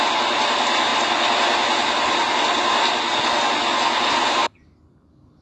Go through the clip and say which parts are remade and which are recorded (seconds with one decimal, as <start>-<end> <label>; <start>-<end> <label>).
0.0-5.4 recorded